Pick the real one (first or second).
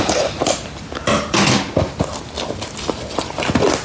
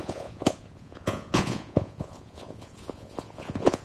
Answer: first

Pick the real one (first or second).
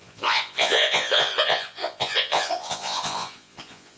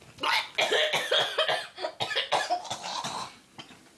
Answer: second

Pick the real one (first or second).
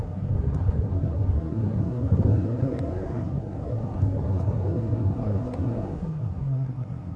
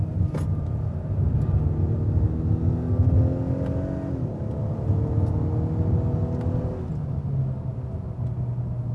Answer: second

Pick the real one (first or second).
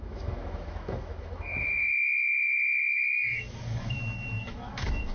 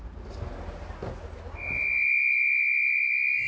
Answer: second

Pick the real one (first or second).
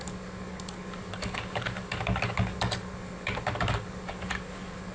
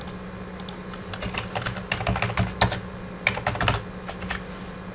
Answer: second